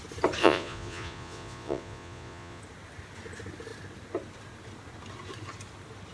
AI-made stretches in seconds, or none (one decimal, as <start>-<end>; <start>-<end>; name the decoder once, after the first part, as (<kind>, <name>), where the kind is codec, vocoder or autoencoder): 0.4-2.6 (vocoder, Vocos)